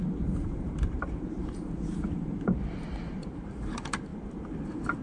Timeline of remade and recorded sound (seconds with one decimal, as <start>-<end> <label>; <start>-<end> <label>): 0.0-5.0 remade